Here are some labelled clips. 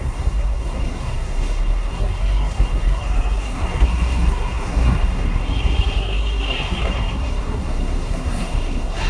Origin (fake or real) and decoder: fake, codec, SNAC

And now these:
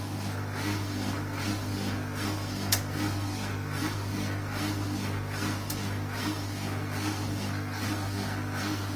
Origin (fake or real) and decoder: fake, codec, SNAC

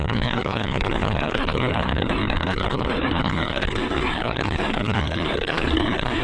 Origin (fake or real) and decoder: fake, codec, SNAC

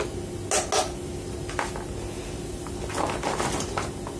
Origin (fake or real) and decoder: real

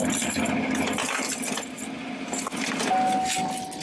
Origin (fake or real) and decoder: real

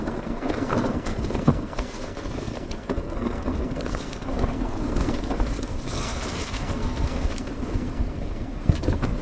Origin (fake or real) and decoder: fake, codec, SNAC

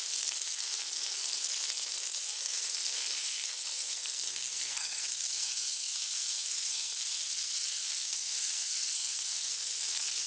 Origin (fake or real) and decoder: fake, codec, SNAC